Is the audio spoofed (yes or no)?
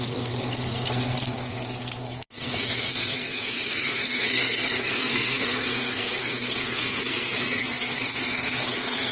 yes